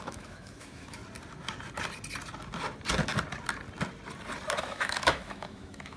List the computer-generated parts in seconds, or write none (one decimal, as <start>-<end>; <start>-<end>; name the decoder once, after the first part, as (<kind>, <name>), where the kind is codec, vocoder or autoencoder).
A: 0.0-1.0 (autoencoder, DAC-VAE); 4.6-6.0